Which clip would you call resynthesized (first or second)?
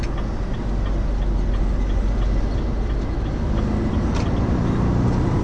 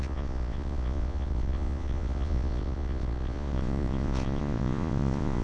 second